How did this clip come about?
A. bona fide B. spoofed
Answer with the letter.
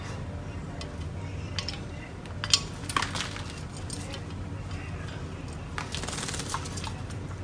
A